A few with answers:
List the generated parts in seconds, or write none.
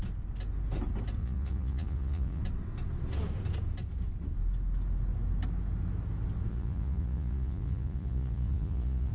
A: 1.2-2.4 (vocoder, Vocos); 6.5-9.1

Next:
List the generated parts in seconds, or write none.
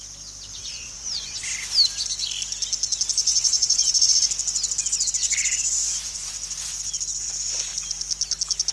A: 0.7-1.4 (vocoder, Vocos); 3.2-4.3; 5.2-6.3